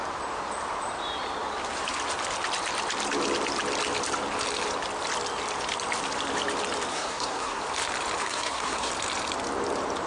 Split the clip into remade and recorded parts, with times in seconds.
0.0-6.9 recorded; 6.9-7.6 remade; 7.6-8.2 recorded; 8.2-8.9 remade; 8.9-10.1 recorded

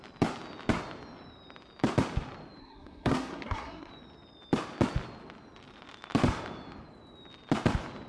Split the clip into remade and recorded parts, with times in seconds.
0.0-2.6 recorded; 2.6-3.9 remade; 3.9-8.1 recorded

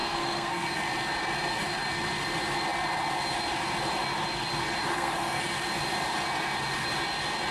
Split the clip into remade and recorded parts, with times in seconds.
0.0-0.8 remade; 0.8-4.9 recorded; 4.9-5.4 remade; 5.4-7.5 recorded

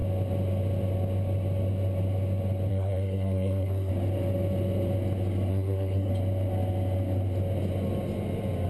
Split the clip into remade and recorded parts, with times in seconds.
0.0-2.7 recorded; 2.7-3.9 remade; 3.9-5.5 recorded; 5.5-6.1 remade; 6.1-8.7 recorded